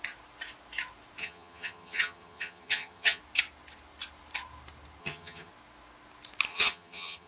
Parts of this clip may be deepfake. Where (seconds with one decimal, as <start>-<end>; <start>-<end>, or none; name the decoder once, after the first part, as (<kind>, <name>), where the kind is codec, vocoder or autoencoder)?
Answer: 1.2-3.2 (vocoder, HiFi-GAN); 5.0-5.5; 6.5-7.3